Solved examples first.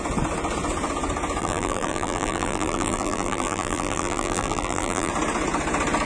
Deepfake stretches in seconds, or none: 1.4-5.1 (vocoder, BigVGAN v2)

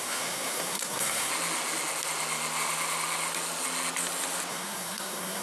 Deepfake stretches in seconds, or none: 0.0-1.3 (codec, SNAC); 4.5-5.4

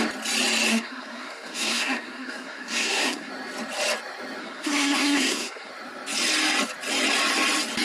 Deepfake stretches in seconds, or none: 0.7-3.3 (codec, SNAC); 4.4-5.7

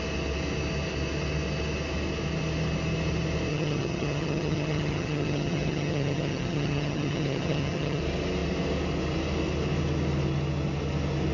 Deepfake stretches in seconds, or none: 3.5-8.0 (vocoder, HiFi-GAN)

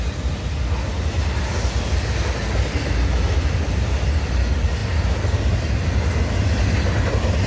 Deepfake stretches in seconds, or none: none

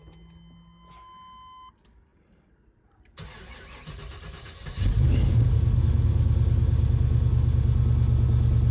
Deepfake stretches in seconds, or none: 2.1-5.4 (vocoder, BigVGAN v2)

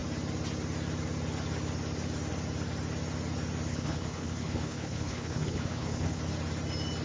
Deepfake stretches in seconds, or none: 3.7-6.2 (codec, HILCodec)